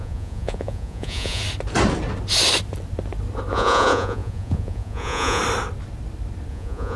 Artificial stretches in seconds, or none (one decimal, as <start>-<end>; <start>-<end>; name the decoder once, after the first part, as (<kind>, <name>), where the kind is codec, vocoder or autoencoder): 0.0-1.4 (vocoder, Vocos); 3.5-5.4; 6.5-7.0